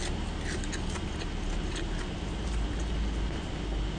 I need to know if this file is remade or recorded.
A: recorded